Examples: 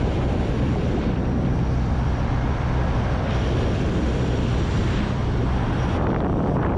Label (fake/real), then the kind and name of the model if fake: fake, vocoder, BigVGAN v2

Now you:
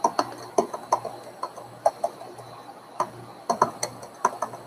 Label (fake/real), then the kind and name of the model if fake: real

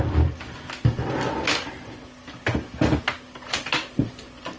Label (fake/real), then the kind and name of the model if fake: real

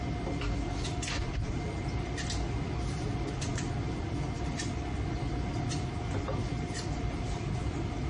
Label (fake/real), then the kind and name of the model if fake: fake, vocoder, BigVGAN v2